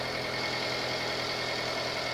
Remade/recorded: recorded